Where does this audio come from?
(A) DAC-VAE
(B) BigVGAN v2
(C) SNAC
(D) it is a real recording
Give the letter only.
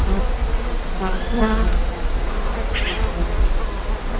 D